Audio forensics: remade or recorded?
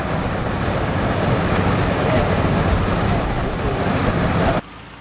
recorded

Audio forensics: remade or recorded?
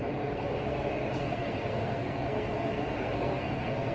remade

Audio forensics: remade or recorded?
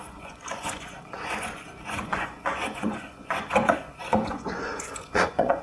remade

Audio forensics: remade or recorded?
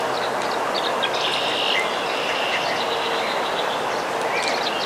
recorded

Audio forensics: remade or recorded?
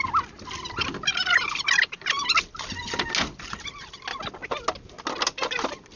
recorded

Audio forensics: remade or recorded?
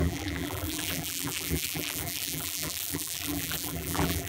remade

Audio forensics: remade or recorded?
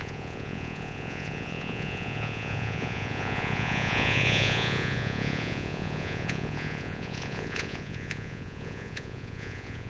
remade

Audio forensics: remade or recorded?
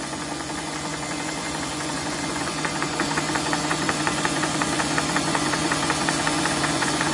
remade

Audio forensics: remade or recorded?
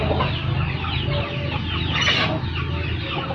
recorded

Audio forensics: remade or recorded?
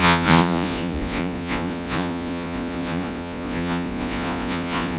remade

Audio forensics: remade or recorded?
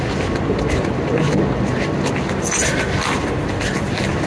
recorded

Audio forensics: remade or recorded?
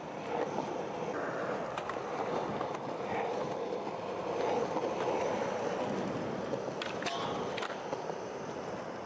recorded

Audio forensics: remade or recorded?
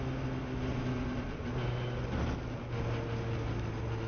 recorded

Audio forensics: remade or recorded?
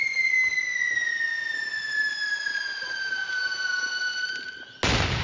recorded